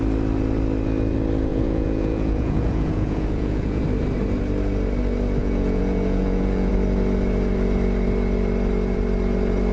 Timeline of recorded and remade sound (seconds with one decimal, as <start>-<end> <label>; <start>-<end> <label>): 0.0-1.5 recorded; 1.5-3.8 remade; 3.8-5.4 recorded; 5.4-6.7 remade; 6.7-9.7 recorded